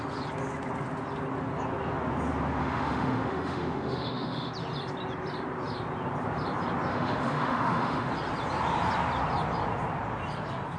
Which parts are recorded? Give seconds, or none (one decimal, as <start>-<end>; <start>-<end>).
0.0-2.6; 4.5-6.9; 8.1-10.8